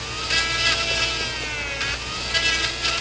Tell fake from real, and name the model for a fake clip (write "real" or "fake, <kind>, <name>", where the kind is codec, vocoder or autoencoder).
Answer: real